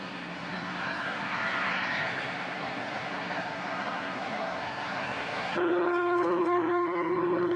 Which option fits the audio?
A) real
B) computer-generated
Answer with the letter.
B